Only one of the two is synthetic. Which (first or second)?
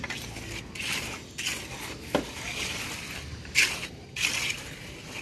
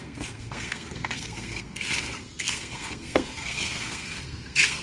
second